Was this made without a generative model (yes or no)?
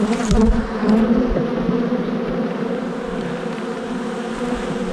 yes